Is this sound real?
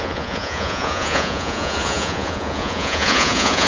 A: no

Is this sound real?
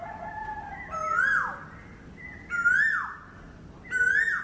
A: yes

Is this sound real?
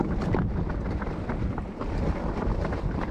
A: yes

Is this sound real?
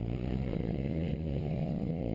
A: no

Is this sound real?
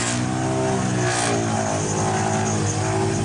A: yes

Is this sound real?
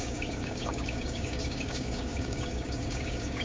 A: no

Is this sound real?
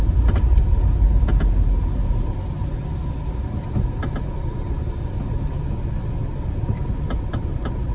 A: yes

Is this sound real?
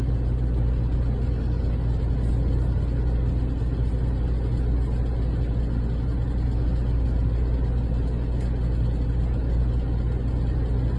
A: yes